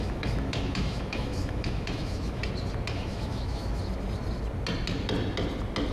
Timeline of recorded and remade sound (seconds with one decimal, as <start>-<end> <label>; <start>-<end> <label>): 0.0-2.4 remade; 2.4-2.9 recorded; 2.9-3.8 remade; 3.8-5.9 recorded